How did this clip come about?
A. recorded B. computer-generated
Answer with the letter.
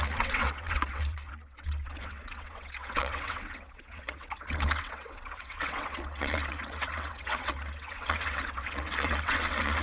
B